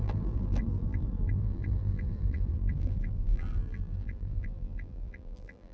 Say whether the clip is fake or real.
fake